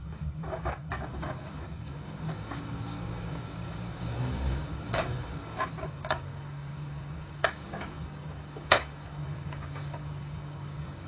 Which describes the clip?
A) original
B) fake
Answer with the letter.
B